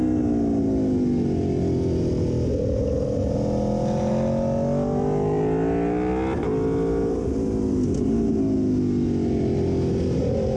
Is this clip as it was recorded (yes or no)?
yes